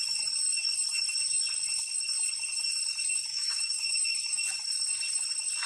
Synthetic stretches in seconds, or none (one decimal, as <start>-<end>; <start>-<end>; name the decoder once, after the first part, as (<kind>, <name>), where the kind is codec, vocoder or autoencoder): 3.3-4.5 (autoencoder, DAC-VAE)

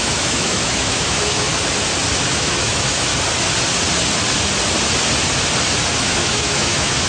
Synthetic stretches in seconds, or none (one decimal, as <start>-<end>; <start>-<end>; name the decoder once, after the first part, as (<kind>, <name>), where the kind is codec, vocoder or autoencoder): 0.0-1.5 (autoencoder, DAC-VAE); 2.3-3.1; 5.9-7.1

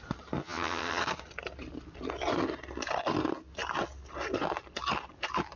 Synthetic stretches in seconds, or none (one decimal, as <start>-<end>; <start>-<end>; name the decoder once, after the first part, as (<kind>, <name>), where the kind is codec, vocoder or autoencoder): 0.4-1.0 (vocoder, HiFi-GAN)